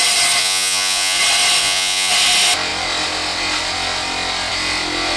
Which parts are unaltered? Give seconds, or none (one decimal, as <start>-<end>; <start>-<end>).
0.0-0.4; 1.2-1.6; 2.1-5.2